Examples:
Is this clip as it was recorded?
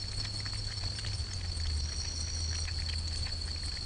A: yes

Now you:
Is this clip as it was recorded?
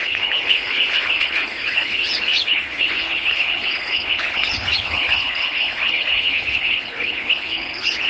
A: no